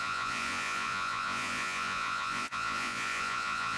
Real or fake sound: fake